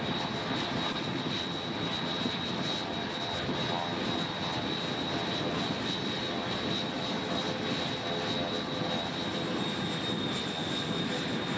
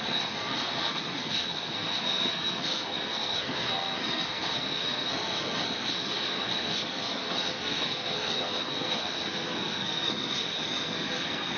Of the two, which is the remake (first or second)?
second